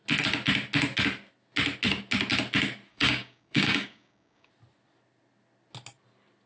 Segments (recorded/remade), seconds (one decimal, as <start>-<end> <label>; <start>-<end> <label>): 0.0-2.9 recorded; 2.9-4.5 remade; 4.5-6.5 recorded